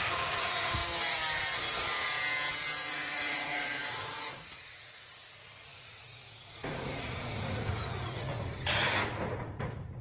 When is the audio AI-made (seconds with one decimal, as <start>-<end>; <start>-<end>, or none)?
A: 0.0-0.8; 2.9-10.0